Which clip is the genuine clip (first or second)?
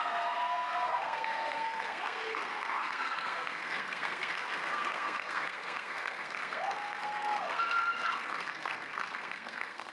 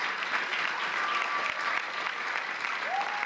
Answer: second